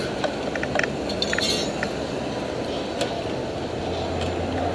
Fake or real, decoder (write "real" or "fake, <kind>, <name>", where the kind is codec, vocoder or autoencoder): real